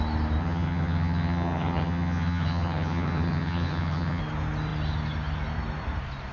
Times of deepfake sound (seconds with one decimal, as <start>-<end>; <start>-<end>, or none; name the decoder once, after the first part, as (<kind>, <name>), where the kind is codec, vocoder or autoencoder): 0.4-4.2 (vocoder, HiFi-GAN)